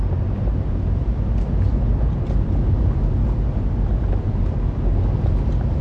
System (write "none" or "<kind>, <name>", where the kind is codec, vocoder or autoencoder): none